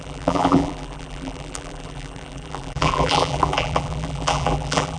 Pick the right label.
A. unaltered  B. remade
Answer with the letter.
B